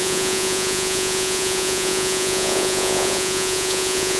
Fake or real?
fake